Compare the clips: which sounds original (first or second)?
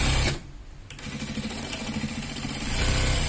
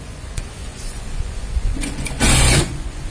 first